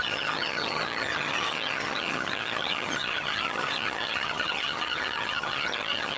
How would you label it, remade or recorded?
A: remade